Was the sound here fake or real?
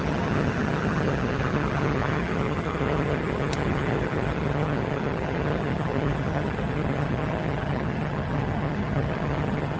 fake